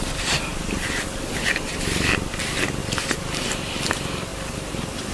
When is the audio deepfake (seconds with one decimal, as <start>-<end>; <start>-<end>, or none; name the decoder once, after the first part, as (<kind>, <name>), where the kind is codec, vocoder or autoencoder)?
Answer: 0.5-2.4 (vocoder, BigVGAN v2); 2.8-3.9; 4.3-5.1